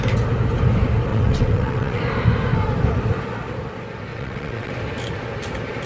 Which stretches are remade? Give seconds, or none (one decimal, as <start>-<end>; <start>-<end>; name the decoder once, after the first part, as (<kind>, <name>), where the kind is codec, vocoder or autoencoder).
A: 1.1-2.0 (vocoder, WaveNeXt); 4.1-4.7